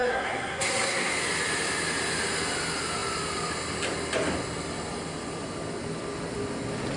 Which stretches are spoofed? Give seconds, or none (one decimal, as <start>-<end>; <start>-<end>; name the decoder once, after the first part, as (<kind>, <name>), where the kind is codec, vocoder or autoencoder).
0.0-1.1 (codec, SNAC)